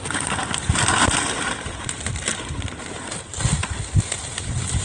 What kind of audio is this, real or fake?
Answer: real